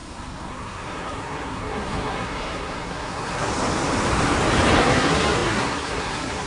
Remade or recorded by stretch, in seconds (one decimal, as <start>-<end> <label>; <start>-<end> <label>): 0.0-3.5 remade; 3.5-4.8 recorded; 4.8-6.5 remade